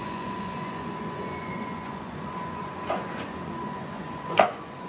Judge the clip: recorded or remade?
remade